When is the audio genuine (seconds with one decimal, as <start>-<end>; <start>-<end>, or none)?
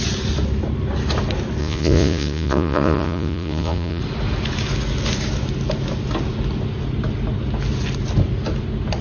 0.0-1.6; 4.0-9.0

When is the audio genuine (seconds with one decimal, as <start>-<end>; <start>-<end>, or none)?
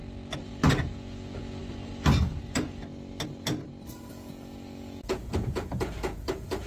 0.0-0.7; 1.6-4.1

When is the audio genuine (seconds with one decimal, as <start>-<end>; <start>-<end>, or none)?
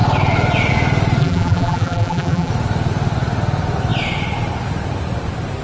0.0-1.2; 2.5-5.6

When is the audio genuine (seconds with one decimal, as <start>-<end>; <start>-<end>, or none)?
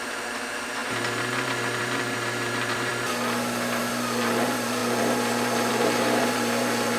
2.9-3.8